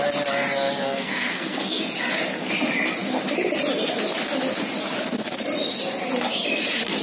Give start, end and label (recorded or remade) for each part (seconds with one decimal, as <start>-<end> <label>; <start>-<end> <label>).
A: 0.0-0.8 recorded; 0.8-1.8 remade; 1.8-7.0 recorded